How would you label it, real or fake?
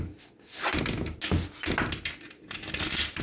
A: real